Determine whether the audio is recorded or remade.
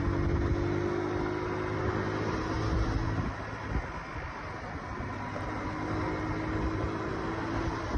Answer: recorded